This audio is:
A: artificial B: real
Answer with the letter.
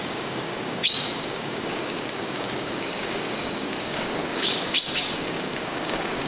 A